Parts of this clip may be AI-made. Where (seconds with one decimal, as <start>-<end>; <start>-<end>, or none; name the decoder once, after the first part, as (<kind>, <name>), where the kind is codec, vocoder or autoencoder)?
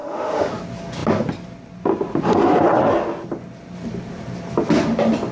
0.0-0.5 (autoencoder, DAC-VAE)